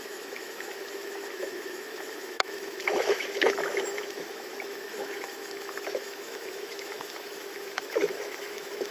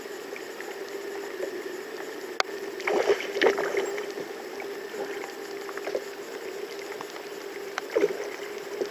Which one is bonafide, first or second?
second